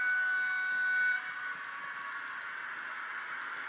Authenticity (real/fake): real